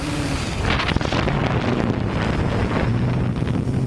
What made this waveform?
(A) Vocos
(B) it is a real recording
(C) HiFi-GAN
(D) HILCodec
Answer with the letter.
B